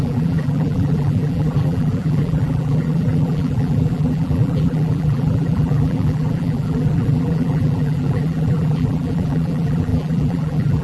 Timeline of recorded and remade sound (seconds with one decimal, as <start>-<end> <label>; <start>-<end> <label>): 0.0-10.8 remade